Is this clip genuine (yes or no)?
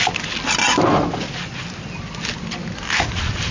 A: yes